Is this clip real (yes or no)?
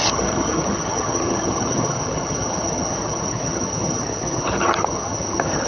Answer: no